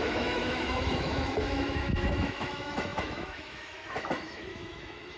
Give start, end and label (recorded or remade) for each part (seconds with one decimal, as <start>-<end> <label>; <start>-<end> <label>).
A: 0.0-5.2 remade

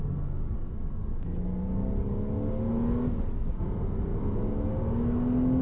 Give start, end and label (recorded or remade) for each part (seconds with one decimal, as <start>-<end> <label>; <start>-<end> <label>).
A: 0.0-4.1 recorded; 4.1-4.7 remade; 4.7-5.6 recorded